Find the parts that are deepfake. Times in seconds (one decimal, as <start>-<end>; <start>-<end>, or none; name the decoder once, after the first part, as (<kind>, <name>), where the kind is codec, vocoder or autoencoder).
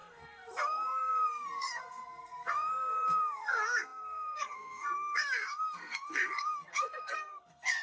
0.0-7.8 (codec, SNAC)